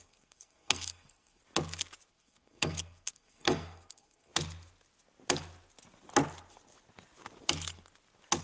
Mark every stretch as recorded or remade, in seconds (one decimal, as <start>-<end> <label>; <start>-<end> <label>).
0.0-1.4 remade; 1.4-2.1 recorded; 2.1-4.3 remade; 4.3-8.4 recorded